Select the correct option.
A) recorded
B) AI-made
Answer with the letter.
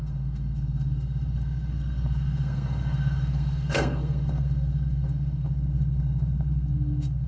B